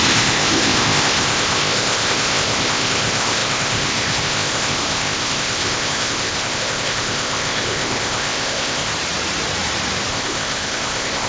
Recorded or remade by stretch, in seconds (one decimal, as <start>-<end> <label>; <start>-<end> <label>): 0.0-8.9 remade; 8.9-10.1 recorded; 10.1-11.3 remade